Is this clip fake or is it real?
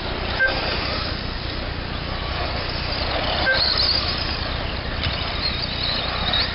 real